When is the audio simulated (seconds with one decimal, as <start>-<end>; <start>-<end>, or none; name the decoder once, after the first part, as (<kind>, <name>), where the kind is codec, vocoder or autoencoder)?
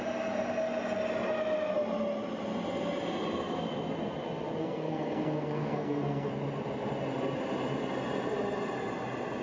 4.6-6.3 (codec, SNAC)